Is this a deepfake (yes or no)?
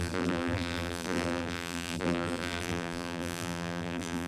yes